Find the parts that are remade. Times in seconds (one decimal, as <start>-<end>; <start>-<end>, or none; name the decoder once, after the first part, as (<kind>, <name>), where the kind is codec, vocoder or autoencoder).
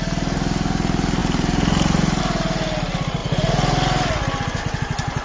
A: 1.2-2.2 (vocoder, BigVGAN v2)